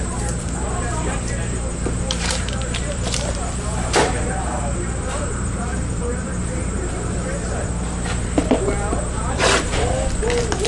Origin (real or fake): fake